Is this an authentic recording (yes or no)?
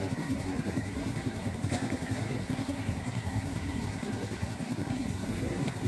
no